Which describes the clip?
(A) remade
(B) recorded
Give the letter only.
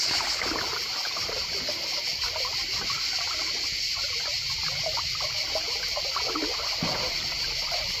B